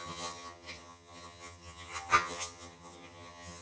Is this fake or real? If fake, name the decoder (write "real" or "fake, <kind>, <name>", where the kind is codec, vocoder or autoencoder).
fake, vocoder, HiFi-GAN